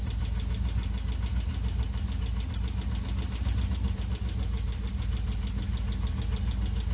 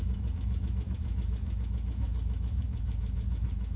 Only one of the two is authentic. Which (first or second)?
first